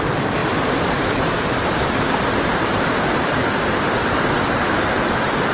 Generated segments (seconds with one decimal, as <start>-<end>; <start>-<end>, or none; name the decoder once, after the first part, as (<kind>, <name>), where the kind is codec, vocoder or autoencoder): 0.0-0.4 (vocoder, BigVGAN v2); 1.1-5.5